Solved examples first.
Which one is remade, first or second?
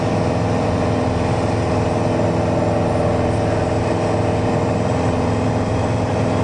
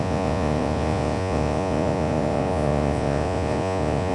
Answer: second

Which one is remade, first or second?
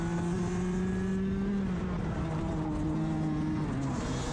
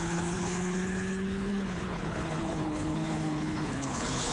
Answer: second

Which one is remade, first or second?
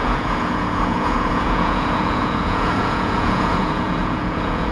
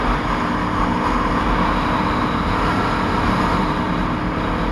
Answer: first